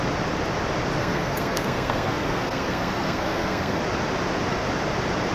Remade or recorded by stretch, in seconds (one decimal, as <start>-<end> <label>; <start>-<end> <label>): 0.0-1.0 recorded; 1.0-3.8 remade; 3.8-5.3 recorded